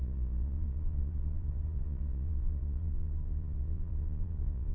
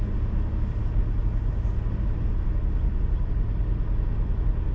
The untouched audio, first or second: second